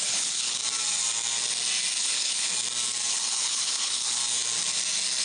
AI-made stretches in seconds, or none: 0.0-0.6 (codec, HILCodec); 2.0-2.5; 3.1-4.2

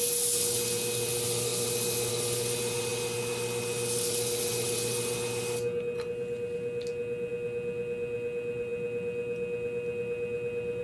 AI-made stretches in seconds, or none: none

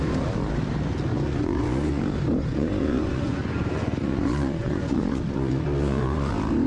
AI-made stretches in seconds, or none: 1.1-2.0 (vocoder, Vocos); 2.4-6.3

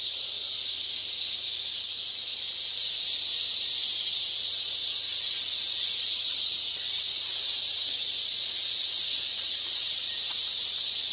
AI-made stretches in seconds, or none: 0.0-2.3 (vocoder, Vocos); 5.6-11.1

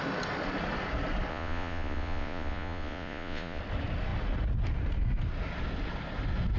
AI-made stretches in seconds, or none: 1.3-3.6 (vocoder, Vocos)

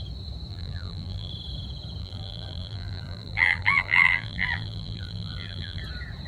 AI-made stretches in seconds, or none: 0.5-1.3 (vocoder, BigVGAN v2); 2.0-5.8